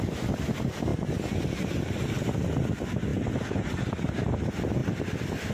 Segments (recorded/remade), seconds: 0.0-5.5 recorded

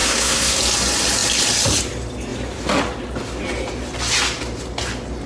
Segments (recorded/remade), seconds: 0.0-0.6 remade; 0.6-5.3 recorded

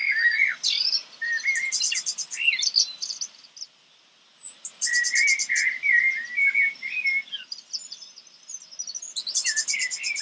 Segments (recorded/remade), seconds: 0.0-10.2 recorded

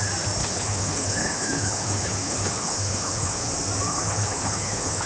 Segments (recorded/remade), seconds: 0.0-0.4 recorded; 0.4-3.5 remade; 3.5-3.9 recorded; 3.9-5.1 remade

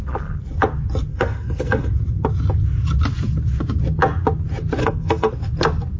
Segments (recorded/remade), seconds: 0.0-1.1 recorded; 1.1-1.9 remade; 1.9-4.8 recorded; 4.8-5.3 remade; 5.3-6.0 recorded

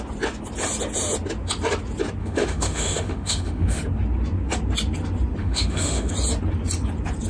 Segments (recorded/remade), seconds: 0.0-2.2 recorded; 2.2-3.8 remade; 3.8-5.4 recorded; 5.4-6.1 remade; 6.1-7.3 recorded